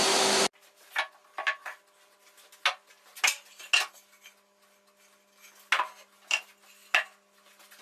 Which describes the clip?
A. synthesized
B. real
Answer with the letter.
B